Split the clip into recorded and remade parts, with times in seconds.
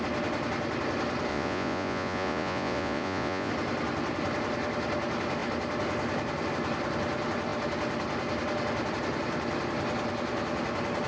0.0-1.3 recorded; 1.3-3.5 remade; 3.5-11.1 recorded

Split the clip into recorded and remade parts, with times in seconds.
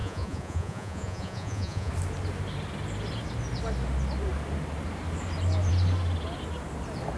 0.0-1.9 remade; 1.9-7.2 recorded